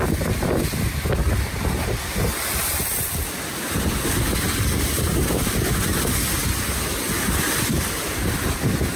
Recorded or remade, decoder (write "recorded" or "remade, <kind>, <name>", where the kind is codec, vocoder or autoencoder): recorded